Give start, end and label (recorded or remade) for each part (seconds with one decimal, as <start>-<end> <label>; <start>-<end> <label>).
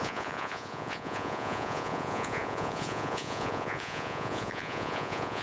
0.0-5.4 remade